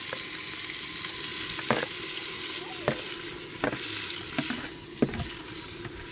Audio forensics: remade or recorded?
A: recorded